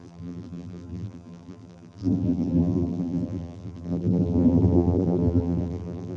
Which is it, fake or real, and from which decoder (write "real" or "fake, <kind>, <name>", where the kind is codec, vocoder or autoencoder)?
fake, vocoder, BigVGAN v2